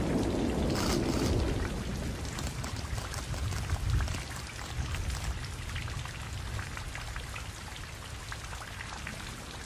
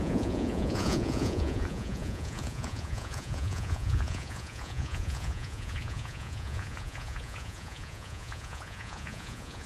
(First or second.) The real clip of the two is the first